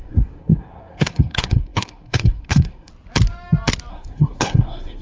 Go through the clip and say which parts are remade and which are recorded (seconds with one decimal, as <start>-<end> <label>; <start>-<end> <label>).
0.0-2.9 remade; 2.9-3.9 recorded; 3.9-5.0 remade